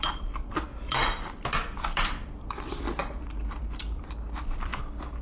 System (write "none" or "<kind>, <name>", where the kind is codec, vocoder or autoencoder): vocoder, BigVGAN v2